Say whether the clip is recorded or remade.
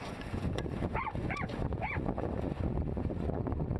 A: remade